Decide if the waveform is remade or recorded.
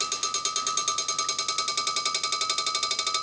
recorded